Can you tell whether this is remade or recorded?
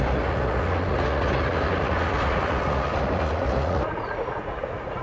remade